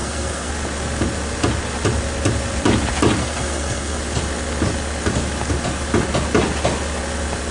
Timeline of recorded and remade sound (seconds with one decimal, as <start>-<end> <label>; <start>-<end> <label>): 0.0-0.5 remade; 0.5-3.2 recorded; 3.2-4.0 remade; 4.0-7.5 recorded

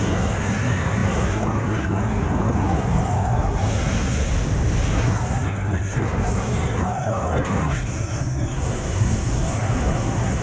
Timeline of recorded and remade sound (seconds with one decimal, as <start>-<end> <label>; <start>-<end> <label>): 0.0-4.3 remade; 4.3-4.9 recorded; 4.9-10.4 remade

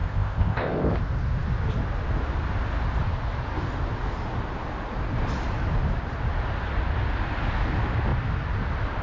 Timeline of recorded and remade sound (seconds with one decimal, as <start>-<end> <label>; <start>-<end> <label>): 0.0-0.9 remade; 0.9-9.0 recorded

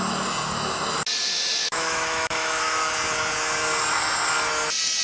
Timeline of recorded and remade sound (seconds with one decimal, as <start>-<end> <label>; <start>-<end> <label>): 0.0-1.6 recorded; 1.6-2.9 remade; 2.9-5.0 recorded